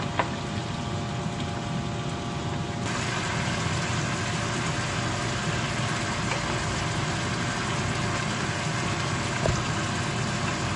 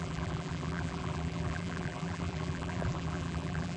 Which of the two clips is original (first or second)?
first